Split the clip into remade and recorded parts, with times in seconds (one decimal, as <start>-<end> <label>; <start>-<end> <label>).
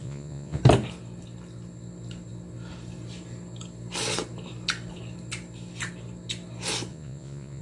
0.0-0.6 remade; 0.6-6.9 recorded; 6.9-7.6 remade